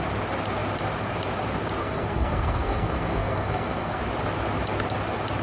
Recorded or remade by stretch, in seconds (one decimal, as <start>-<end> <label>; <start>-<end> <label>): 0.0-1.8 recorded; 1.8-4.0 remade; 4.0-5.4 recorded